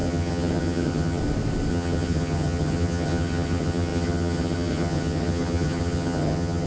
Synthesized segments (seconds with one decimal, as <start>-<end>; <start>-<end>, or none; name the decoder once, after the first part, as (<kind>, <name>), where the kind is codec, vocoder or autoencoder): 0.0-1.2 (vocoder, HiFi-GAN); 1.7-6.7